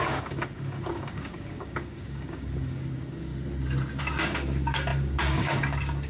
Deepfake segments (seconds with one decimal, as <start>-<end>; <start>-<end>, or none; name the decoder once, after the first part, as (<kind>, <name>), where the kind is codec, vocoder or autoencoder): 0.0-3.3 (codec, DAC); 4.0-6.1